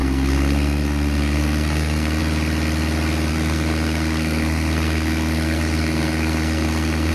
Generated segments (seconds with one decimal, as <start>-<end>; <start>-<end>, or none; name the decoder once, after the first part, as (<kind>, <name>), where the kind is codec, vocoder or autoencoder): 0.0-2.2 (codec, SNAC); 3.3-7.1